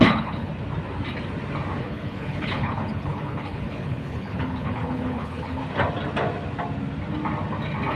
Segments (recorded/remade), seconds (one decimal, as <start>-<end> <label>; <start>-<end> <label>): 0.0-0.5 remade; 0.5-1.8 recorded; 1.8-5.6 remade; 5.6-8.0 recorded

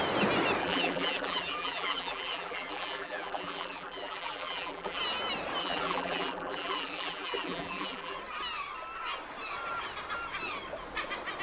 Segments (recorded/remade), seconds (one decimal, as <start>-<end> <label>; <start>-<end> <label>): 0.0-0.6 recorded; 0.6-5.0 remade; 5.0-5.6 recorded; 5.6-8.2 remade; 8.2-11.4 recorded

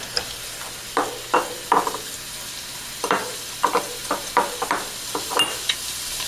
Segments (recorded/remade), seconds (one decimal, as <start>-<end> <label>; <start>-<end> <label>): 0.0-6.3 recorded

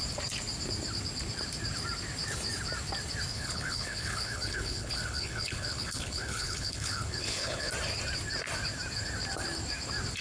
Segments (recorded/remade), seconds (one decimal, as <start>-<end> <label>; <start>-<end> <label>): 0.0-3.3 recorded; 3.3-7.7 remade; 7.7-10.2 recorded

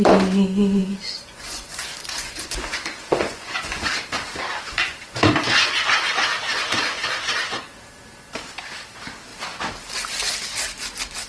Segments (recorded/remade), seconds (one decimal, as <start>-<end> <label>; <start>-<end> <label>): 0.0-0.8 recorded; 0.8-3.9 remade; 3.9-4.5 recorded; 4.5-5.9 remade; 5.9-6.5 recorded; 6.5-7.6 remade; 7.6-11.3 recorded

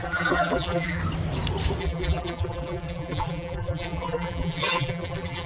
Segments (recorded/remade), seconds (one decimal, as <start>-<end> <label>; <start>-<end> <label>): 0.0-1.0 remade; 1.0-1.8 recorded; 1.8-5.5 remade

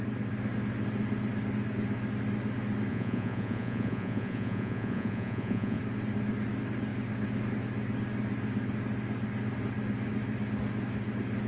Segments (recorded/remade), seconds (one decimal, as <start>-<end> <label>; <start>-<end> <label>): 0.0-2.9 recorded; 2.9-5.8 remade; 5.8-11.5 recorded